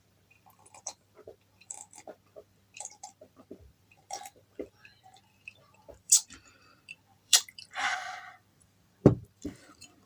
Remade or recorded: remade